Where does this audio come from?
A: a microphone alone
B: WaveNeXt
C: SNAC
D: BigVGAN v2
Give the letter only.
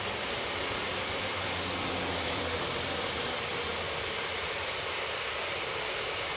D